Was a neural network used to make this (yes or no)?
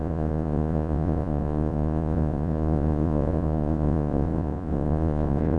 yes